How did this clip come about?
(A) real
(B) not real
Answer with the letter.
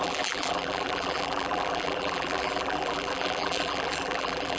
B